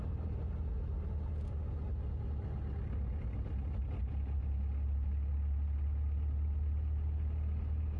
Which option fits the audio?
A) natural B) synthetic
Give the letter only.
A